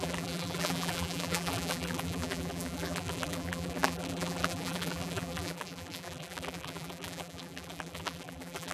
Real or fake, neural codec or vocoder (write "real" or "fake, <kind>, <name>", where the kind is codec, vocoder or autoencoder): fake, vocoder, BigVGAN v2